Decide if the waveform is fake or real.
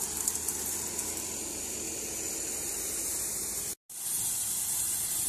real